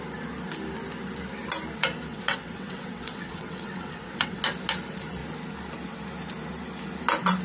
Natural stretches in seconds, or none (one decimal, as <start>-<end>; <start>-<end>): 0.0-2.1; 4.4-7.4